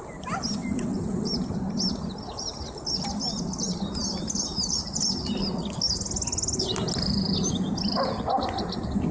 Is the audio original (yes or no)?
yes